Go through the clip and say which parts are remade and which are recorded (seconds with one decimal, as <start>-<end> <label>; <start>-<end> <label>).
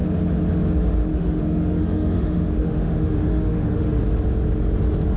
0.0-1.1 recorded; 1.1-4.0 remade; 4.0-5.2 recorded